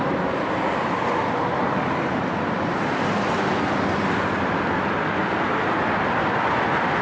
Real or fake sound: real